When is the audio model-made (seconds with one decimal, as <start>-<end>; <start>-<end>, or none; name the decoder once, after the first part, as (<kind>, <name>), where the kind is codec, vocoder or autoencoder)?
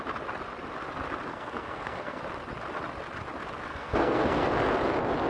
1.3-2.2 (codec, SNAC); 3.7-4.5